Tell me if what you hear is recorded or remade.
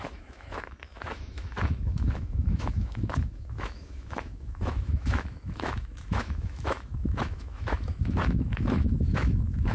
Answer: remade